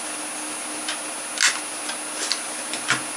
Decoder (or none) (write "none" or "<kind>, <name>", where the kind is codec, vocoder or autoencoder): none